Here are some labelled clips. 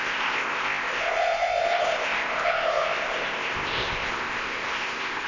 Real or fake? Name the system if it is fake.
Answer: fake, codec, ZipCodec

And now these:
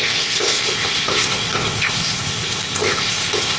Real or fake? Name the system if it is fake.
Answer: fake, codec, ZipCodec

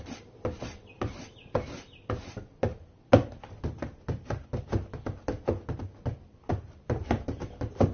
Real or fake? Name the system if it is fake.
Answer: real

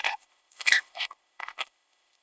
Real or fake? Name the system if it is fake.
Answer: fake, codec, ZipCodec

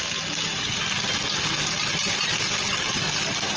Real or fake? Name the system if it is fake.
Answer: real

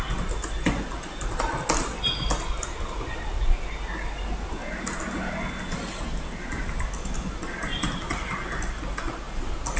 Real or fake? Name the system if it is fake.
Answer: real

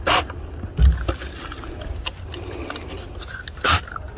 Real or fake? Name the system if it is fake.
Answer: real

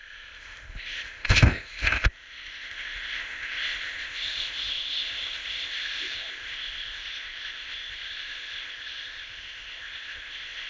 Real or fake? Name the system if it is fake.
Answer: fake, codec, ZipCodec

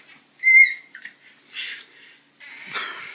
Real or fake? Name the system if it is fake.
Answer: real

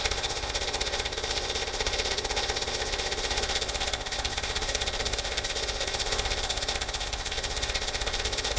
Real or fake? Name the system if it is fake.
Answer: fake, codec, ZipCodec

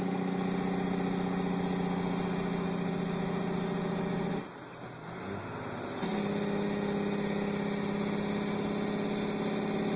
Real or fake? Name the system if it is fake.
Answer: real